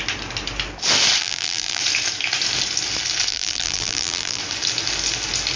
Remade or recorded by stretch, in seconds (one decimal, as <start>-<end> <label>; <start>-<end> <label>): 0.0-1.2 recorded; 1.2-1.8 remade; 1.8-3.3 recorded; 3.3-4.4 remade; 4.4-5.6 recorded